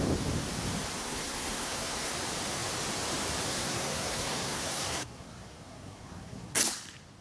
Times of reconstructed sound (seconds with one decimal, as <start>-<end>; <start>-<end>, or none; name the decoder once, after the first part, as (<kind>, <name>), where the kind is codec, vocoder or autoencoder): 1.0-2.1 (codec, SNAC); 3.5-6.5